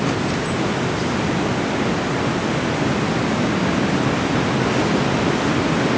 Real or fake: real